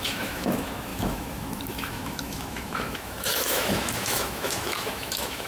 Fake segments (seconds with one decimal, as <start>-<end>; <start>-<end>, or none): 0.0-5.5